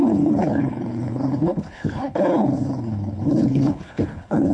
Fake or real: fake